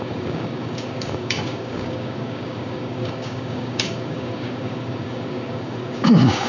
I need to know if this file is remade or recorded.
remade